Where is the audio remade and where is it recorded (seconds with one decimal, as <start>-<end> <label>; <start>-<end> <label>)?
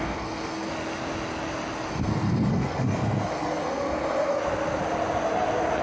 0.0-0.7 remade; 0.7-1.9 recorded; 1.9-4.4 remade; 4.4-5.8 recorded